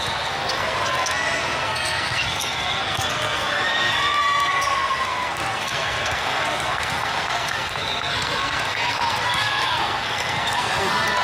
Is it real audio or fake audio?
fake